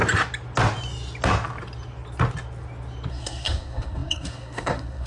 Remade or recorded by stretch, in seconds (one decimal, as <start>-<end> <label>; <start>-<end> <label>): 0.0-3.1 recorded; 3.1-5.1 remade